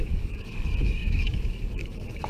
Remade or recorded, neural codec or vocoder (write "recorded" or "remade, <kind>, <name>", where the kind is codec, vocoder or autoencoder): remade, codec, DAC